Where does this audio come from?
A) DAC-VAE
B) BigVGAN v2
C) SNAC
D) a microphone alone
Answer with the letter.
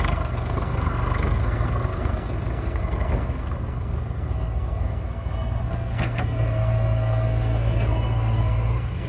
C